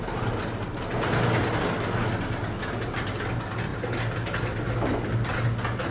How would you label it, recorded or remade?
recorded